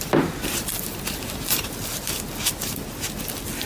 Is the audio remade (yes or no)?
no